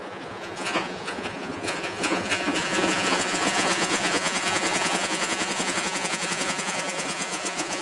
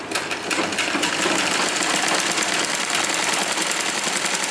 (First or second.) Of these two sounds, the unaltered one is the second